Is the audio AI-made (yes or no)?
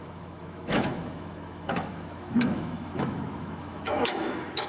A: yes